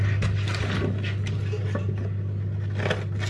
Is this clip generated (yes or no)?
no